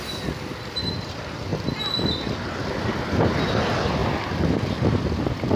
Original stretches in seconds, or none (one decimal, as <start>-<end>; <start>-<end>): 0.0-5.6